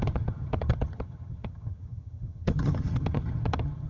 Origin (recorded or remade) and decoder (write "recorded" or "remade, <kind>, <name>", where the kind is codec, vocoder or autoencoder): remade, vocoder, HiFi-GAN